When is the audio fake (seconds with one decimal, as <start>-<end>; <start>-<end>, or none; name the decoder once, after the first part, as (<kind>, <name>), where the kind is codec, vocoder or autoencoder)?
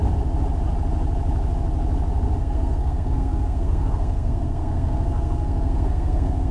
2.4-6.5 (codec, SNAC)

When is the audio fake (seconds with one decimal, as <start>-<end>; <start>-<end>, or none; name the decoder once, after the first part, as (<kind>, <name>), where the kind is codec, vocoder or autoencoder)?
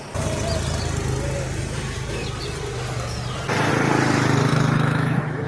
4.5-5.5 (autoencoder, DAC-VAE)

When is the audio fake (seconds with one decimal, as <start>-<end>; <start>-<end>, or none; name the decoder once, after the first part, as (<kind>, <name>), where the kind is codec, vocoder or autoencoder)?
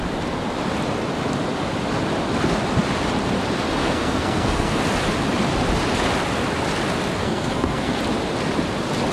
3.8-4.8 (codec, SNAC); 7.2-8.0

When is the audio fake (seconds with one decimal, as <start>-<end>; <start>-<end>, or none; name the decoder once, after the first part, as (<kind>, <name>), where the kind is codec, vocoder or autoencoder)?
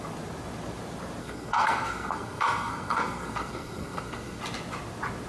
1.2-4.4 (codec, SNAC)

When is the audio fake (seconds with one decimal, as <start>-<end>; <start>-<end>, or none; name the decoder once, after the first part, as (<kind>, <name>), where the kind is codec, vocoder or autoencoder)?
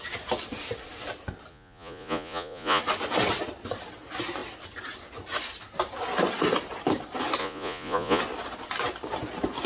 1.5-2.8 (vocoder, Vocos); 7.4-8.2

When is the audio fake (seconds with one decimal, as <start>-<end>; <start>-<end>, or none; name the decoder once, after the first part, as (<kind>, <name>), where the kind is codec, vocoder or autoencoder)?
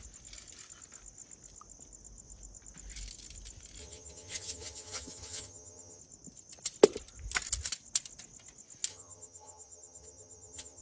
3.8-6.0 (vocoder, HiFi-GAN); 8.9-10.8